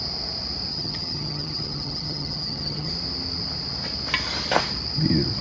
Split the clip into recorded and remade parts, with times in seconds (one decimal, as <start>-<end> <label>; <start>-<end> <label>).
0.0-0.7 recorded; 0.7-2.9 remade; 2.9-5.4 recorded